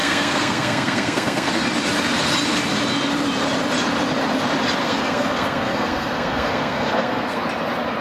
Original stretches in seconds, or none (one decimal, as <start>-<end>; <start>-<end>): 1.5-4.8; 7.4-8.0